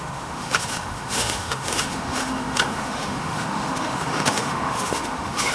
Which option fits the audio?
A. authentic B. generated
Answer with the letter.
B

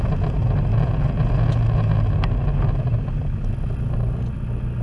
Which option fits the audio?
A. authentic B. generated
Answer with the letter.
A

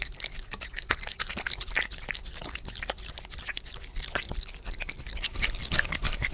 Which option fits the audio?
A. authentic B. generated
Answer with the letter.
A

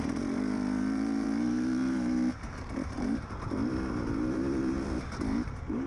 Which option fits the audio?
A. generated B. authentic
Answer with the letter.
A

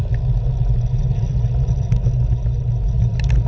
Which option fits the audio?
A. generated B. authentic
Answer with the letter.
B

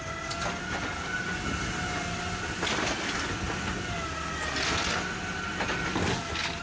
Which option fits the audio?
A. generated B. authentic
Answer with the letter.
B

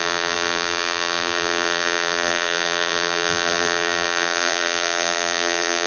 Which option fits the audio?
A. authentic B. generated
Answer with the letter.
B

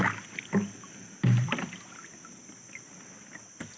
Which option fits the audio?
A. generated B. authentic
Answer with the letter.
B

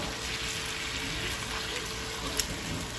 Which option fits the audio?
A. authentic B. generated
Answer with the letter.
A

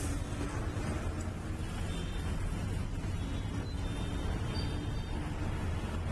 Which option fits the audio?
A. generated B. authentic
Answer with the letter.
B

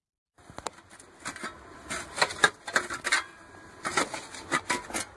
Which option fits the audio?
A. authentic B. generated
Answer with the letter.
A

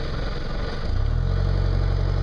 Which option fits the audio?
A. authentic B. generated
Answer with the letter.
A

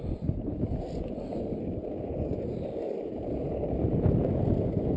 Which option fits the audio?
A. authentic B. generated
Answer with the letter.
A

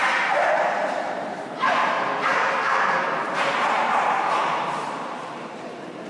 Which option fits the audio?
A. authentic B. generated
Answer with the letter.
B